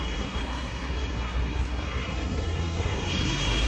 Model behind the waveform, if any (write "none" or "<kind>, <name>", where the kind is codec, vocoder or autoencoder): codec, SNAC